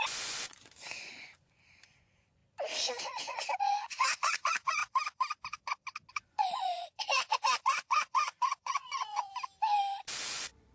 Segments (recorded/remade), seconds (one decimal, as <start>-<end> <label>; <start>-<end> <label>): 0.0-2.4 remade; 2.4-3.0 recorded; 3.0-4.8 remade; 4.8-6.1 recorded; 6.1-9.3 remade; 9.3-10.2 recorded; 10.2-10.7 remade